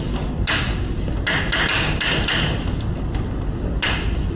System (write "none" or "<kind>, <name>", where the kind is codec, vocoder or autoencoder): none